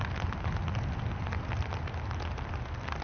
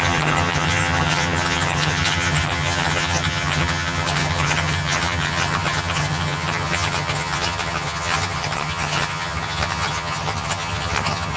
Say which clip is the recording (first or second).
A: first